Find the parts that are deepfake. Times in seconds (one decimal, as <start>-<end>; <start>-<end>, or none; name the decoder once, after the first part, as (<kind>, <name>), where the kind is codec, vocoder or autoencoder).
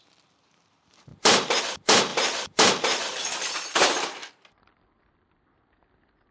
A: 2.1-4.3 (vocoder, BigVGAN v2)